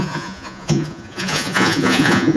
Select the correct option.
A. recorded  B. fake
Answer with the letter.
B